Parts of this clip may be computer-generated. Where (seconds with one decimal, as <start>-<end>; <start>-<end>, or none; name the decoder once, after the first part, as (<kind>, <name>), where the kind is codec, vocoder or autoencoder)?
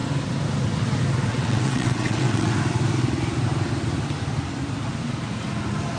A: 1.3-2.5 (vocoder, WaveNeXt)